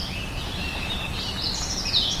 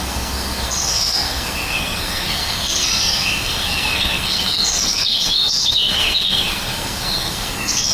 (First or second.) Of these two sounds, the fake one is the second